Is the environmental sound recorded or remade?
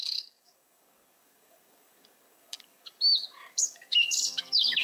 remade